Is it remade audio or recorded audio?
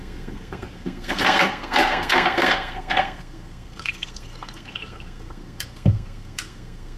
remade